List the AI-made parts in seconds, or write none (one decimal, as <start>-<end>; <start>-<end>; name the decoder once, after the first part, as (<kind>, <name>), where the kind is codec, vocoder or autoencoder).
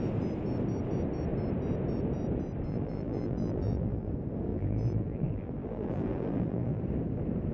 2.7-4.1 (vocoder, BigVGAN v2); 4.5-6.8